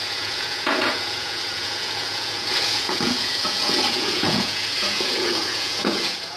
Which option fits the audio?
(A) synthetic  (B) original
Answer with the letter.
A